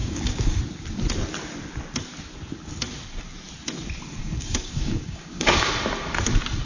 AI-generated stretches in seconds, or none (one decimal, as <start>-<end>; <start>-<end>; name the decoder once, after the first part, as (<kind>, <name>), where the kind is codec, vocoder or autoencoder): 0.0-0.6 (codec, DAC); 4.2-5.7